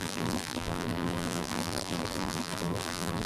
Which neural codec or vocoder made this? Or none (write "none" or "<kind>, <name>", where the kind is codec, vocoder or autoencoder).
vocoder, BigVGAN v2